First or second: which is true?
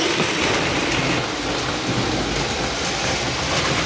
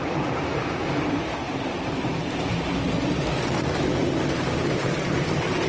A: first